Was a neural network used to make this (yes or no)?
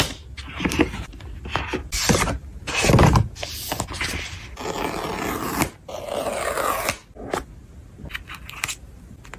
no